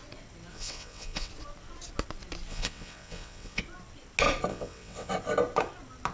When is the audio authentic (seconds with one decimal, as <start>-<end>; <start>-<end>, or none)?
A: 0.0-0.5; 1.3-2.5; 3.6-4.5; 5.1-6.1